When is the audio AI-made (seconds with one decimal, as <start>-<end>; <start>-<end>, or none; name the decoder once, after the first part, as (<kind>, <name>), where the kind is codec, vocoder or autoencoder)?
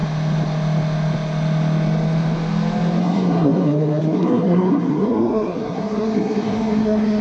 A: 3.0-7.2 (codec, SNAC)